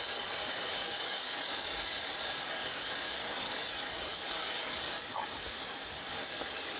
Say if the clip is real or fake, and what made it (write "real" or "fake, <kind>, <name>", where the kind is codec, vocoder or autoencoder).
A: fake, codec, DAC